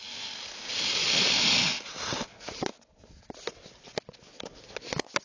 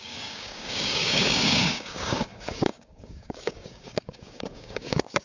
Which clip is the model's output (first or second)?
second